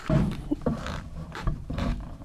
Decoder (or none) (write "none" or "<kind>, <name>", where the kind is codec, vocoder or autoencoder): vocoder, BigVGAN v2